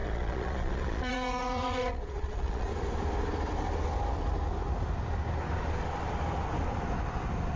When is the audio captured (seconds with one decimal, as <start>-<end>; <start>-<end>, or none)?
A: 2.7-7.6